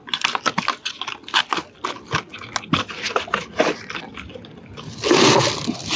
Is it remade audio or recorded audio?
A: recorded